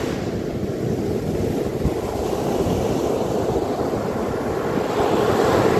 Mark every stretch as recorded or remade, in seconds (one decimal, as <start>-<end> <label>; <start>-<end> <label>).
0.0-5.8 recorded